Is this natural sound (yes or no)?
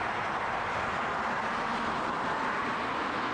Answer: yes